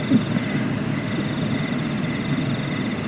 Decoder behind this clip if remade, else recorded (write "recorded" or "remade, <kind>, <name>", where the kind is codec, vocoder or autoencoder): recorded